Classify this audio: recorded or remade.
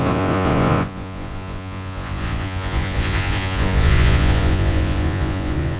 remade